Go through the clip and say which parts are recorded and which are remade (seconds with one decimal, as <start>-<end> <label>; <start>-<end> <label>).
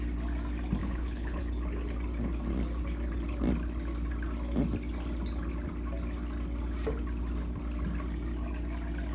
0.0-0.8 recorded; 0.8-1.4 remade; 1.4-9.1 recorded